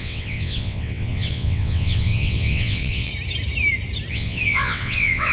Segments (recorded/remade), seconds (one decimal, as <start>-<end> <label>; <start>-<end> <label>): 0.0-3.1 remade; 3.1-4.1 recorded; 4.1-5.3 remade